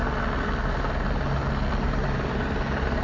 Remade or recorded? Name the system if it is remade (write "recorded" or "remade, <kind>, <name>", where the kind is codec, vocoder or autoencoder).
recorded